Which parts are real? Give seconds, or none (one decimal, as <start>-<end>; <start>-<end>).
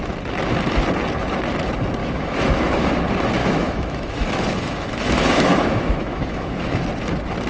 0.0-2.0; 3.0-3.4; 6.8-7.5